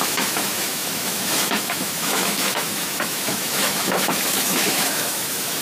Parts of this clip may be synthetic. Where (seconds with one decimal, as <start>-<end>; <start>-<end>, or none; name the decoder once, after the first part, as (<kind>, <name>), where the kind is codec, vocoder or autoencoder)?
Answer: 0.0-5.6 (autoencoder, DAC-VAE)